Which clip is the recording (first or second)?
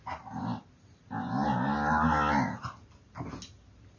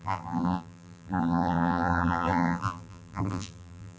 first